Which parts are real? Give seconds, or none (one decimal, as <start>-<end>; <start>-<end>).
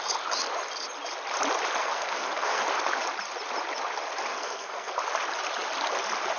0.0-1.8; 2.6-4.3; 4.9-6.4